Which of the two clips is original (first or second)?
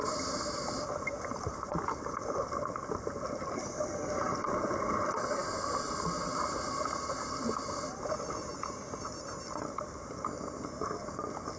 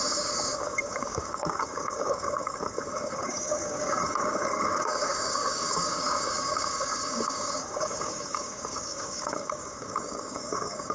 first